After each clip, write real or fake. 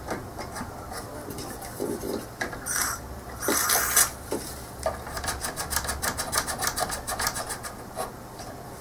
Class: fake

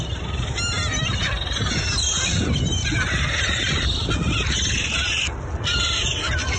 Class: real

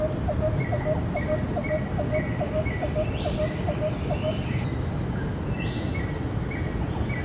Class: real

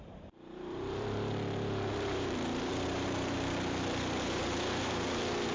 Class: fake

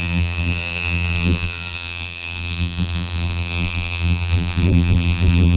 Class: fake